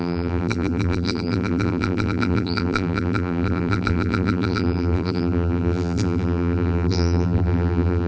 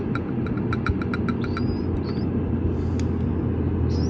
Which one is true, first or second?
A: second